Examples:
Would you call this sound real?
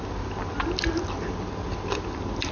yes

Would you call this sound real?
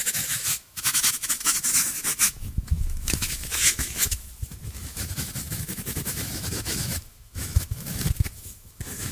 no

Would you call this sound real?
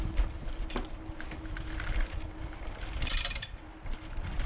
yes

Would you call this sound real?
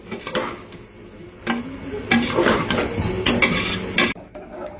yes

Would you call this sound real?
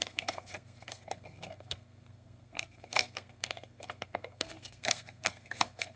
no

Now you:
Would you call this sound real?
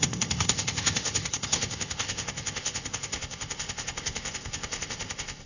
no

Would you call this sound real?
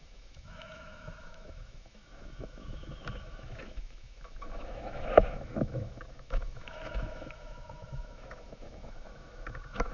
no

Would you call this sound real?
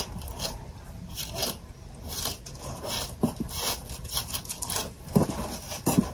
yes